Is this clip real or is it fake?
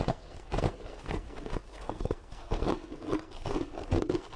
fake